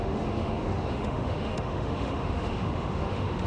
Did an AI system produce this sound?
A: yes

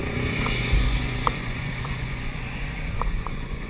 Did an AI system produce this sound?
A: yes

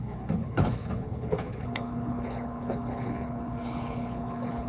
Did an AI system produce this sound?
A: yes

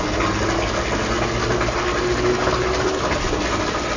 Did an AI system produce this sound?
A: no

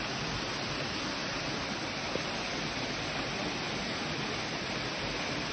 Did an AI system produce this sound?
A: no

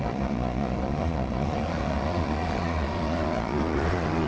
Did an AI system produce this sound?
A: yes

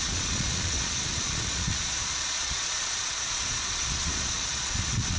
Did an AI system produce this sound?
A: yes